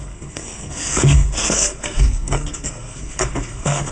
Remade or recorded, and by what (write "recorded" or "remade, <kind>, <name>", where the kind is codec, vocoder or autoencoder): remade, codec, SNAC